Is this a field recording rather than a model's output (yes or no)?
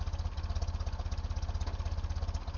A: yes